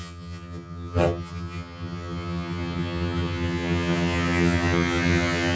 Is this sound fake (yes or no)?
yes